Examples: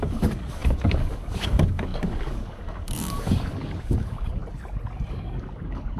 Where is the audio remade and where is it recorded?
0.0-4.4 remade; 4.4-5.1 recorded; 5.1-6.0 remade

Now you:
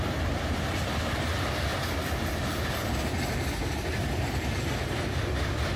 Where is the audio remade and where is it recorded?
0.0-5.8 recorded

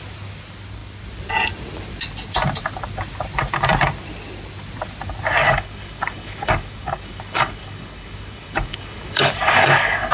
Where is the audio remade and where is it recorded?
0.0-5.4 recorded; 5.4-10.1 remade

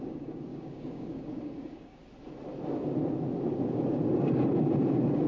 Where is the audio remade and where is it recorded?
0.0-2.0 remade; 2.0-5.3 recorded

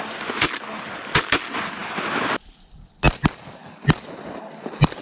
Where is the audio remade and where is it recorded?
0.0-5.0 recorded